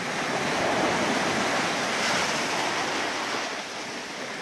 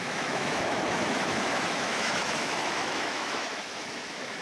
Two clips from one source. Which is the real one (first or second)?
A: first